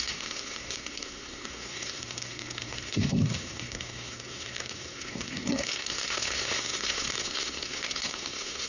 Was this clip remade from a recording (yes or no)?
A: yes